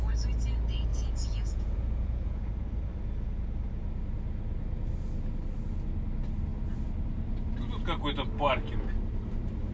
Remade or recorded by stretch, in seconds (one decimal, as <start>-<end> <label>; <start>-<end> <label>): 0.0-0.9 recorded; 0.9-2.5 remade; 2.5-9.7 recorded